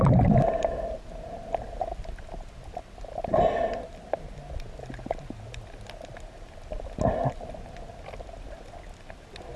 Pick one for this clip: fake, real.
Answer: real